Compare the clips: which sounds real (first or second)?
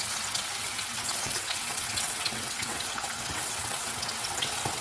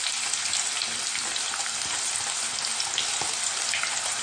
second